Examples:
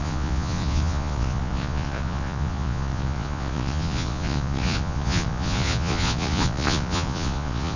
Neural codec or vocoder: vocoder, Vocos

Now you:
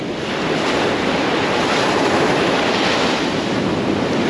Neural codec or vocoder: none